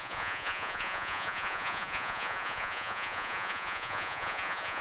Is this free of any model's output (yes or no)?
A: no